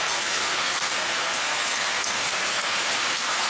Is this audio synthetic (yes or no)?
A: yes